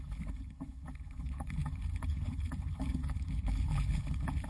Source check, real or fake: fake